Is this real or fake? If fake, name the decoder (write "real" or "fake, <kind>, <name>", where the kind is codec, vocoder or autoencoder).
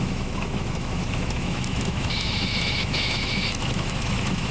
fake, autoencoder, DAC-VAE